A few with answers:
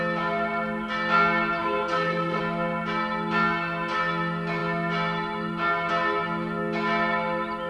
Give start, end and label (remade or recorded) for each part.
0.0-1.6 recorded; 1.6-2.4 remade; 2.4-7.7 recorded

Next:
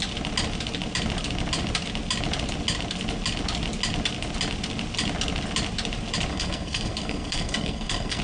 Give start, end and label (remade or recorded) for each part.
0.0-6.3 recorded; 6.3-8.2 remade

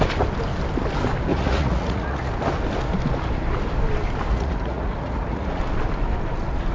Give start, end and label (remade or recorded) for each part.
0.0-1.3 recorded; 1.3-2.3 remade; 2.3-4.3 recorded; 4.3-5.6 remade; 5.6-6.7 recorded

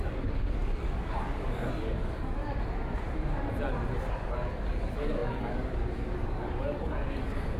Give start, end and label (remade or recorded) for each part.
0.0-2.4 remade; 2.4-4.1 recorded; 4.1-7.6 remade

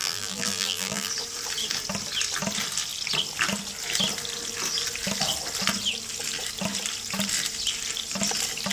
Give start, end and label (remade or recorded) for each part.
0.0-1.1 remade; 1.1-8.7 recorded